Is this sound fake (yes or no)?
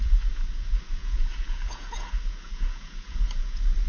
yes